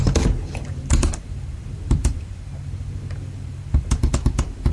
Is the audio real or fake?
fake